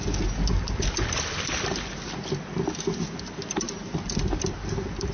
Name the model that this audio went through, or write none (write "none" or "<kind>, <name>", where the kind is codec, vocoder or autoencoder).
none